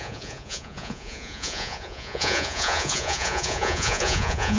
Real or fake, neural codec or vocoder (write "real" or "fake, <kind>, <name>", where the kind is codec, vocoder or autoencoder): fake, vocoder, Vocos